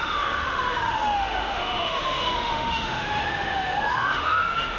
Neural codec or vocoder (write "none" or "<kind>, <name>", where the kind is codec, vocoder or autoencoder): autoencoder, DAC-VAE